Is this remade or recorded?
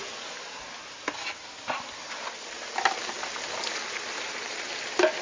recorded